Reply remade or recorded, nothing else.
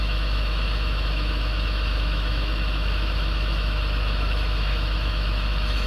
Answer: remade